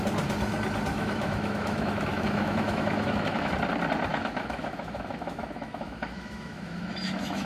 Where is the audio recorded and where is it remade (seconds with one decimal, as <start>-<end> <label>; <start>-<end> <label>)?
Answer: 0.0-0.9 recorded; 0.9-3.5 remade; 3.5-4.1 recorded; 4.1-7.5 remade